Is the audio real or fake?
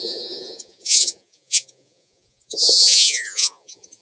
fake